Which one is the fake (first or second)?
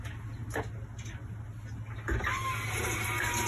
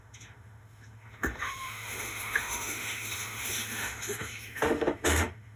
second